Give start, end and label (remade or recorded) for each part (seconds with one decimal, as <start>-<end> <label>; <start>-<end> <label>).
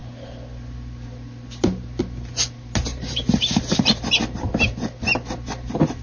0.0-2.9 recorded; 2.9-4.4 remade; 4.4-6.0 recorded